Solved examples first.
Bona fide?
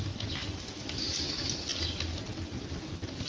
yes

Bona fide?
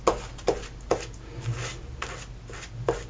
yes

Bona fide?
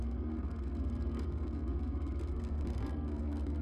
no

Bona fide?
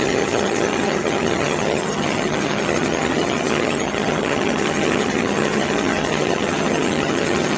no